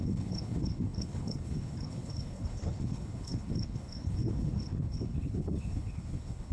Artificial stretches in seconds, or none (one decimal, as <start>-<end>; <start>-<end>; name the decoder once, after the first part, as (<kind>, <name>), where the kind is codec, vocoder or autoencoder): 0.0-6.5 (codec, HILCodec)